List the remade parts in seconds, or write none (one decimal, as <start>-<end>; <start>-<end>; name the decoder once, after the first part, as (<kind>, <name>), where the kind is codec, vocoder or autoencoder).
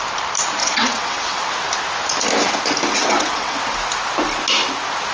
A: 0.6-1.5 (vocoder, WaveNeXt); 2.9-3.6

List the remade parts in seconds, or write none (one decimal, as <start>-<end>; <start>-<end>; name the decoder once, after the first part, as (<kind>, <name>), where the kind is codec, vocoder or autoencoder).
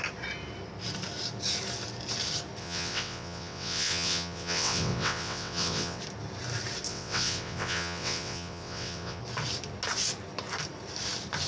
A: 2.6-6.0 (vocoder, WaveNeXt); 6.9-9.2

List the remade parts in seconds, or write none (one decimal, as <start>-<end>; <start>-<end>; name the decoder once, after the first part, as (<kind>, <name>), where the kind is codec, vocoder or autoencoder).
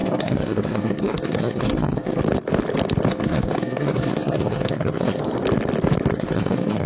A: 0.0-2.2 (codec, SNAC); 3.1-5.2; 6.1-6.9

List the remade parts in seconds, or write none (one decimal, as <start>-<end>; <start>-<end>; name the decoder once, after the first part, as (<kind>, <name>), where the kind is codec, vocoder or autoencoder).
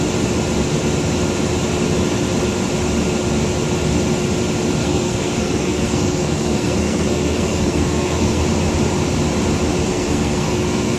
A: 4.8-8.4 (codec, SNAC); 9.9-11.0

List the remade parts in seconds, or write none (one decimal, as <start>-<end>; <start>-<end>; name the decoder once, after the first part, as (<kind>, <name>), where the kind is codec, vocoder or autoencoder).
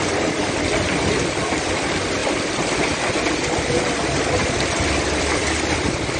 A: 2.2-6.2 (vocoder, BigVGAN v2)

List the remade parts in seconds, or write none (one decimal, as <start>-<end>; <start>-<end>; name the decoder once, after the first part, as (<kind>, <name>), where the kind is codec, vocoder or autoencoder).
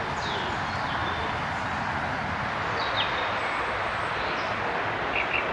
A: none